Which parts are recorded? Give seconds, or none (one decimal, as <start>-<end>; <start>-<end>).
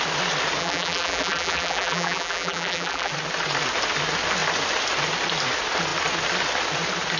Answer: 0.0-0.6; 3.1-7.2